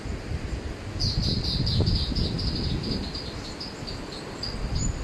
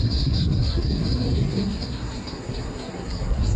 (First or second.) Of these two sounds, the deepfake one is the second